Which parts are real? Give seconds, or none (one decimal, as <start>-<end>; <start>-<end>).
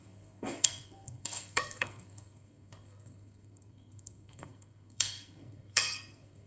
none